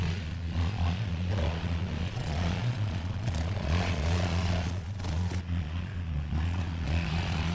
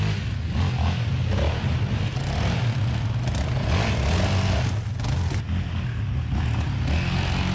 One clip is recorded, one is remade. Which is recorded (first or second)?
second